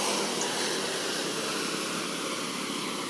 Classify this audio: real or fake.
real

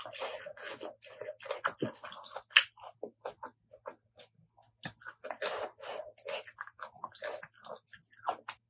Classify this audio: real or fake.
real